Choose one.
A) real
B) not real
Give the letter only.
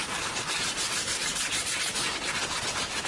A